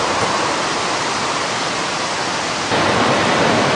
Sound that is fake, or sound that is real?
real